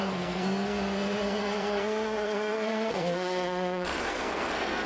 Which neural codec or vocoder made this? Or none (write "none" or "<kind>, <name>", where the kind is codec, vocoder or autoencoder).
codec, SNAC